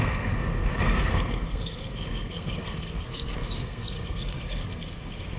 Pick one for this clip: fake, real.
fake